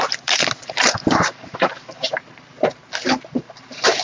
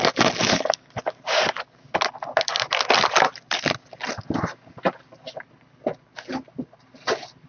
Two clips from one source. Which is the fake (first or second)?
first